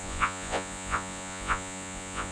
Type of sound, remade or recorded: remade